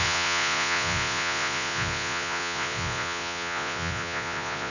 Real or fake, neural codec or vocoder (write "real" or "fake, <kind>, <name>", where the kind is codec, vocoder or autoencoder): fake, vocoder, Vocos